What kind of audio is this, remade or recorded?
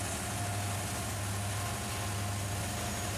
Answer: recorded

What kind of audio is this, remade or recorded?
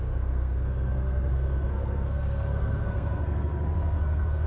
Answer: remade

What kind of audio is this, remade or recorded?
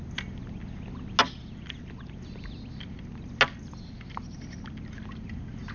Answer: recorded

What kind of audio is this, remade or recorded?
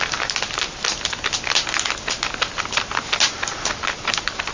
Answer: recorded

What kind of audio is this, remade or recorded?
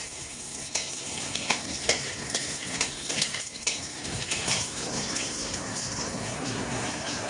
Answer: remade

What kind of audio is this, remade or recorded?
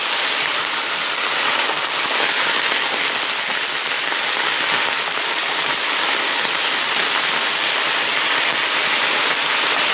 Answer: recorded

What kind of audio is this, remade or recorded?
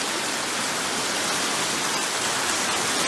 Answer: recorded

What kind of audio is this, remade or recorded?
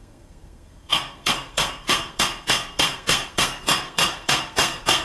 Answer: remade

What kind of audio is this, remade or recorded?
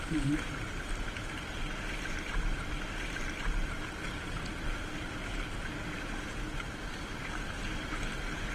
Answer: recorded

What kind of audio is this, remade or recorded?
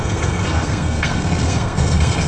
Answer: remade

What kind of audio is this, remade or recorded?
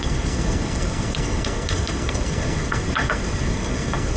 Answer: remade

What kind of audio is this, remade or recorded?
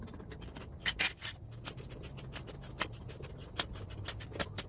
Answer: recorded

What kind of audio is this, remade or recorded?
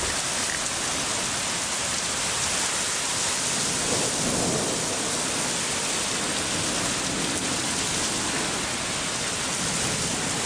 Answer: recorded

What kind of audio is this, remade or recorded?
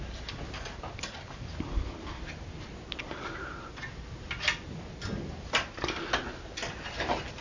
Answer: recorded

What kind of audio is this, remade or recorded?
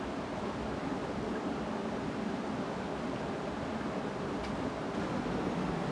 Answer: recorded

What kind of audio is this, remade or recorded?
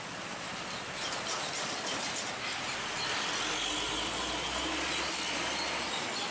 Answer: recorded